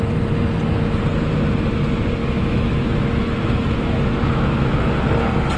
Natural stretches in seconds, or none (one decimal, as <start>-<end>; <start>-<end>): 0.0-2.2; 4.9-5.6